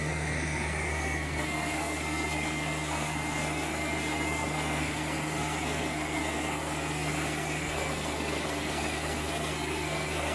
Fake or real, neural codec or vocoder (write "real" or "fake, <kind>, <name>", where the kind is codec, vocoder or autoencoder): fake, codec, SNAC